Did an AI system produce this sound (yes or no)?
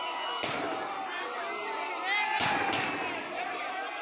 no